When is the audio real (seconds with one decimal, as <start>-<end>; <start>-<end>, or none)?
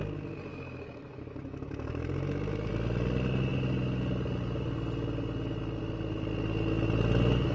0.0-0.5; 2.7-7.5